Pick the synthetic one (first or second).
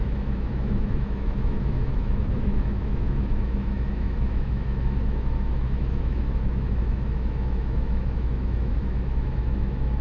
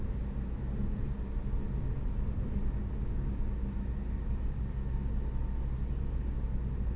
first